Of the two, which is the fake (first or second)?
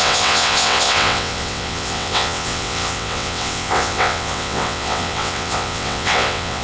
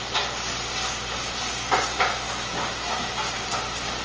first